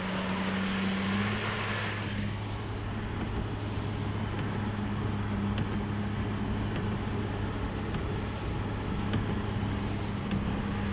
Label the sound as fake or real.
real